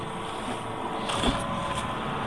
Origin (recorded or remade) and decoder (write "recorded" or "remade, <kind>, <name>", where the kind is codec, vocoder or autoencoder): recorded